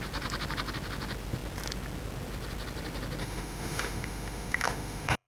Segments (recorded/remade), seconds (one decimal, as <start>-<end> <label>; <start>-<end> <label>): 0.0-3.2 recorded; 3.2-5.3 remade